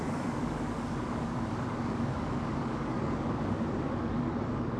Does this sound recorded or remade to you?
remade